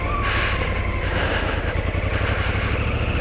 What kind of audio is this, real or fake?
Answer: real